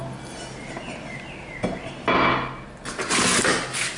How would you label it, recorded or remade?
recorded